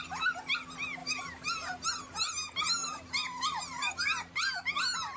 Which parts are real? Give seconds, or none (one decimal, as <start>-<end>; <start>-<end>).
0.0-1.0; 1.9-2.8; 3.9-5.2